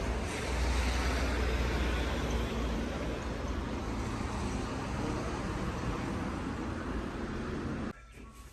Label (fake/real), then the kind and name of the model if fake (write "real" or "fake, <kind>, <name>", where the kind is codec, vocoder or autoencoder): real